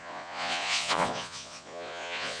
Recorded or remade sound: remade